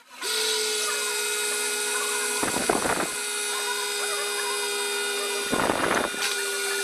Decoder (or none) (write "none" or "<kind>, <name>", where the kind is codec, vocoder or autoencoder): none